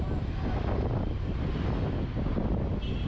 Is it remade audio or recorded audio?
recorded